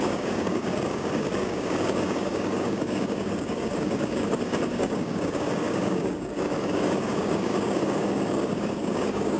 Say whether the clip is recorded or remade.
remade